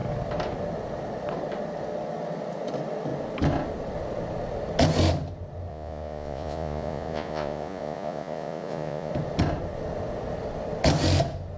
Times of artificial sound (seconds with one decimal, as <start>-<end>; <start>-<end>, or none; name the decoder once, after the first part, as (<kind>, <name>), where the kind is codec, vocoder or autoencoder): 5.7-9.1 (vocoder, Vocos)